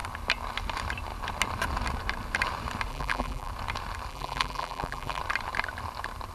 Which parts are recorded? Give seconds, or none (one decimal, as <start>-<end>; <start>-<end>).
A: 0.0-2.9; 3.5-4.1; 5.2-6.3